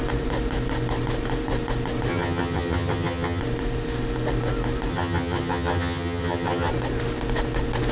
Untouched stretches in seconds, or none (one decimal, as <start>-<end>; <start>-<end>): 0.0-2.1; 3.4-4.9; 6.7-7.9